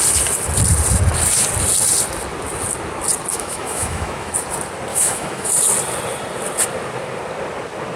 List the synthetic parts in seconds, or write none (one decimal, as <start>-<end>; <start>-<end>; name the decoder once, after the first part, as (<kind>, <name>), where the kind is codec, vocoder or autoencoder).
3.3-4.3 (autoencoder, DAC-VAE); 4.9-5.5